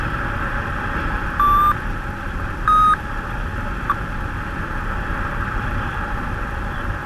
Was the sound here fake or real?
real